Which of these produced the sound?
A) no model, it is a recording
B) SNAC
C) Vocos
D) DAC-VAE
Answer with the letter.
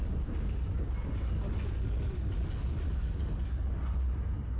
A